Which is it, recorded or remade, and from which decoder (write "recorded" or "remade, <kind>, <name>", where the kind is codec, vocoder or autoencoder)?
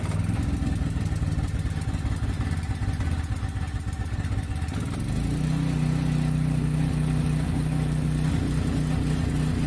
recorded